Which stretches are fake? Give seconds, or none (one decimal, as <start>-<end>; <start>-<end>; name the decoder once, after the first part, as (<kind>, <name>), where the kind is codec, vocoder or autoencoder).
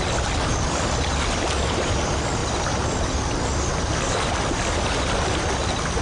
none